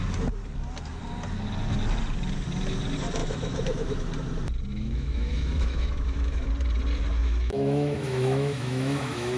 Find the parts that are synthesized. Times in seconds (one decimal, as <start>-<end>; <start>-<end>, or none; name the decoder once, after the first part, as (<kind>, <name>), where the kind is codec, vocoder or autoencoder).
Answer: 3.2-4.1 (autoencoder, DAC-VAE); 4.7-6.5; 7.2-9.4